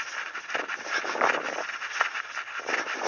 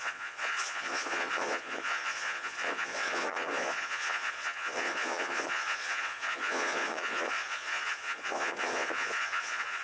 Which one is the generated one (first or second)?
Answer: second